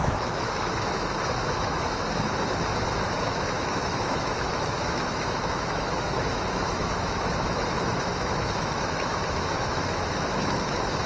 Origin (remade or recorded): remade